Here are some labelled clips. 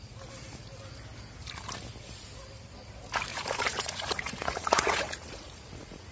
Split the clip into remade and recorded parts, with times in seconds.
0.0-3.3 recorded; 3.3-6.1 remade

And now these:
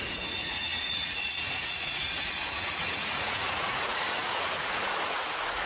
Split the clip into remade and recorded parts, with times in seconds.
0.0-5.7 remade

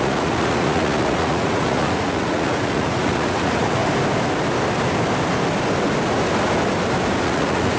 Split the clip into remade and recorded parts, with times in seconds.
0.0-3.8 remade; 3.8-7.2 recorded; 7.2-7.8 remade